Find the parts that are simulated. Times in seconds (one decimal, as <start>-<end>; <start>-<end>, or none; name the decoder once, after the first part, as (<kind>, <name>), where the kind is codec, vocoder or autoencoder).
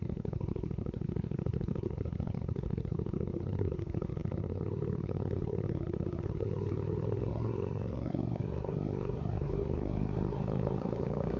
0.0-11.4 (codec, SNAC)